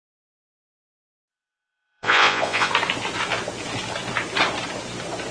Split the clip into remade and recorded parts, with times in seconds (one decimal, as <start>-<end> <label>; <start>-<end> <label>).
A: 0.0-1.3 recorded; 1.3-2.7 remade; 2.7-5.3 recorded